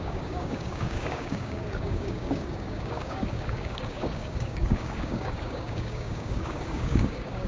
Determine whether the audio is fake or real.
fake